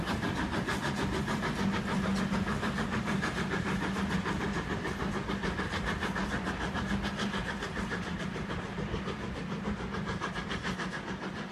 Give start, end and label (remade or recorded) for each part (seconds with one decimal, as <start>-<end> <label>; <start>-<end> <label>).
0.0-11.5 recorded

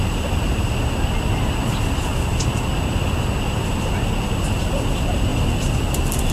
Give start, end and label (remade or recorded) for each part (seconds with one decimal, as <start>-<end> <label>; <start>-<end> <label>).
0.0-6.3 recorded

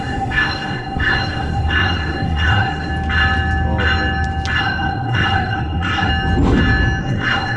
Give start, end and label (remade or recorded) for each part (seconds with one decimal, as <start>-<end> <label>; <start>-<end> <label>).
0.0-2.9 remade; 2.9-4.6 recorded; 4.6-6.1 remade; 6.1-7.0 recorded; 7.0-7.6 remade

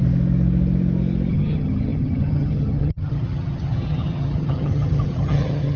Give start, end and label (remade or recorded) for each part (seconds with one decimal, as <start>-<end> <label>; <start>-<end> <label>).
0.0-1.3 recorded; 1.3-5.8 remade

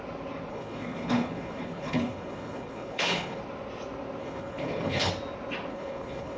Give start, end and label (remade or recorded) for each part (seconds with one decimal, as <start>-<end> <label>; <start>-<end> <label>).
0.0-0.5 recorded; 0.5-3.4 remade; 3.4-4.2 recorded; 4.2-5.1 remade; 5.1-5.7 recorded; 5.7-6.4 remade

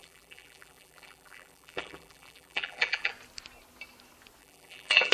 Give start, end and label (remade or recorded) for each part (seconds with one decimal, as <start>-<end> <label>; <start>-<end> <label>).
0.0-3.1 remade; 3.1-4.4 recorded; 4.4-5.1 remade

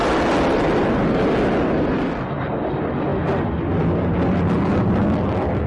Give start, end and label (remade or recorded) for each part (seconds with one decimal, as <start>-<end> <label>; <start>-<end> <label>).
0.0-5.7 recorded